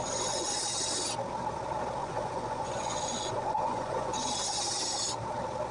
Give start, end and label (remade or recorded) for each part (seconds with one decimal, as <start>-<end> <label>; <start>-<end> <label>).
0.0-0.6 remade; 0.6-2.0 recorded; 2.0-4.3 remade; 4.3-5.7 recorded